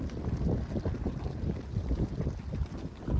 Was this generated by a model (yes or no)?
no